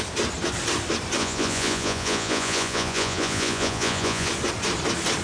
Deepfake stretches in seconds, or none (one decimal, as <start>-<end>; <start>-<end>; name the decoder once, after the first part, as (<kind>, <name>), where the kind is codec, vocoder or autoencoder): 1.2-4.3 (vocoder, Vocos)

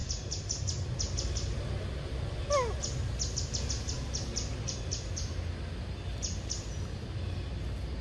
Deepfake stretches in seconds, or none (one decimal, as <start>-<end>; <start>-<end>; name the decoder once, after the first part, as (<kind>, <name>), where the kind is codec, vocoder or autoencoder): none

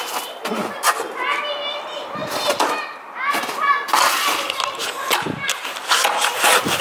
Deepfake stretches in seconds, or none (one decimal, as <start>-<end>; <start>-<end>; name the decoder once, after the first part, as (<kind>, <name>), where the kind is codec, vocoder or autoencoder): none

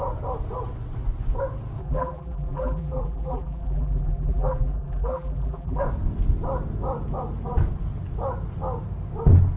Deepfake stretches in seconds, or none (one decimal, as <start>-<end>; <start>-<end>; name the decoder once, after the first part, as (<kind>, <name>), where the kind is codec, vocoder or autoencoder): 1.8-5.8 (vocoder, BigVGAN v2)

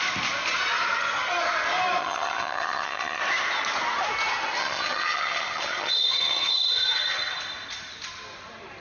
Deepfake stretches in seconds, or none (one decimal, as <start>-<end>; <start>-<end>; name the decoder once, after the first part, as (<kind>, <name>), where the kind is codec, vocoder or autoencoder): 2.0-3.2 (vocoder, HiFi-GAN); 4.6-7.4

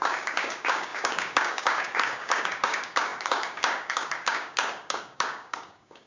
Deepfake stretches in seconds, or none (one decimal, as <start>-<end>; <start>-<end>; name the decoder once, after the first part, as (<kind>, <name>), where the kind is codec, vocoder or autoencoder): 0.0-6.1 (codec, DAC)